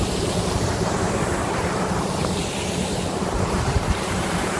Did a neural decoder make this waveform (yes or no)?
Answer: yes